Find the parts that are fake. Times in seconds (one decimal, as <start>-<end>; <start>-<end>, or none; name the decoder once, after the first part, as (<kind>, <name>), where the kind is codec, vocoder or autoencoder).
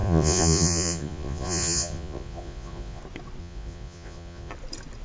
0.0-3.0 (vocoder, Vocos); 3.4-4.5